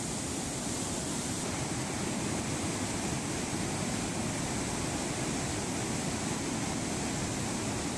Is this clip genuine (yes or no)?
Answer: yes